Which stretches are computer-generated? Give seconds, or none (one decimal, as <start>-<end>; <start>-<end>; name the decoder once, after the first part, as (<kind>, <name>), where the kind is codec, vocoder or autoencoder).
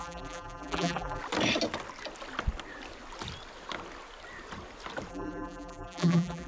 0.0-1.2 (vocoder, BigVGAN v2); 5.1-6.5